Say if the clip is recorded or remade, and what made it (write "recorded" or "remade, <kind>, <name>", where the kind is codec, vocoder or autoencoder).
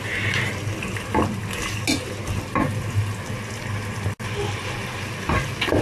recorded